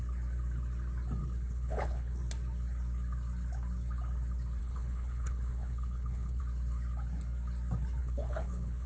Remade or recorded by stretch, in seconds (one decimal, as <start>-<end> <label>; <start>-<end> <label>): 0.0-1.2 recorded; 1.2-2.2 remade; 2.2-4.6 recorded; 4.6-6.4 remade; 6.4-8.0 recorded; 8.0-8.9 remade